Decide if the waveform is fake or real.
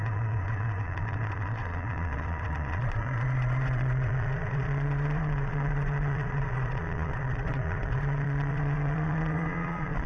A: fake